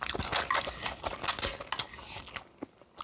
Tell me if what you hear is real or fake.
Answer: real